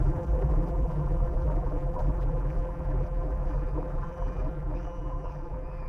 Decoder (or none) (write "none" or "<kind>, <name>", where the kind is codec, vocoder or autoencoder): vocoder, BigVGAN v2